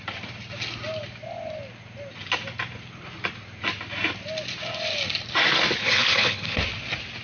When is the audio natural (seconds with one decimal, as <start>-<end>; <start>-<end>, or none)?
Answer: 0.0-5.8; 6.6-7.2